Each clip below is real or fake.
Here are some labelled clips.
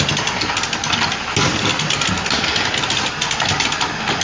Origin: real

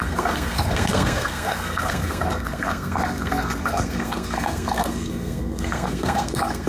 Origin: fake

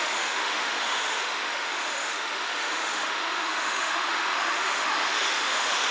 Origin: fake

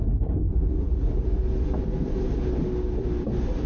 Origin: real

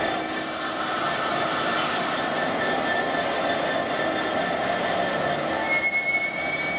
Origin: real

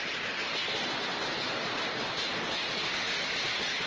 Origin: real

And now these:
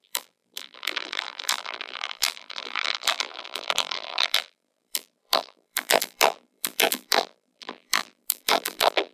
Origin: fake